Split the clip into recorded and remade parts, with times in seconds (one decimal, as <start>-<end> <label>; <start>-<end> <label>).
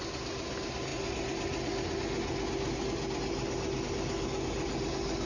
0.0-5.3 recorded